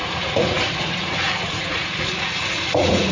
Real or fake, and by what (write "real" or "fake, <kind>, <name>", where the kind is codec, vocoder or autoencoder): fake, vocoder, Vocos